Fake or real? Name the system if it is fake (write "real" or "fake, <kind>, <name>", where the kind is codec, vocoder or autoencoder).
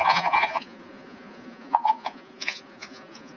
fake, vocoder, Vocos